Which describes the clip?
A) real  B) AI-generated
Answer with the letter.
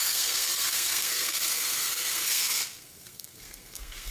B